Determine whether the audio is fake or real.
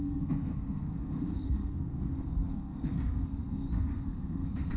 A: fake